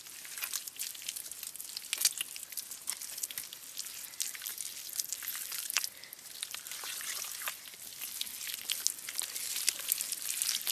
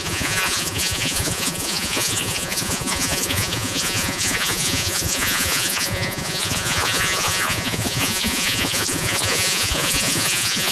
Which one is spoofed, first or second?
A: second